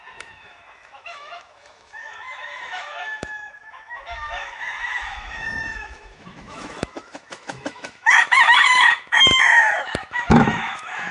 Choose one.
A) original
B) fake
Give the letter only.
B